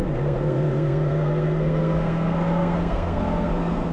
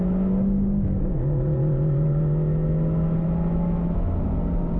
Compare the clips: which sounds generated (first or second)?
first